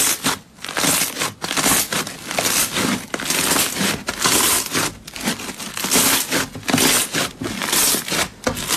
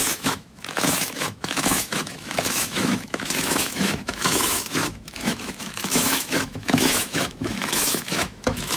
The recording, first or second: first